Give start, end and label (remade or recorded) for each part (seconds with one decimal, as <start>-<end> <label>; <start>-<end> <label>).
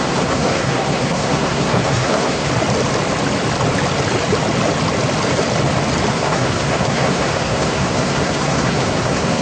0.0-2.5 remade; 2.5-6.1 recorded; 6.1-9.4 remade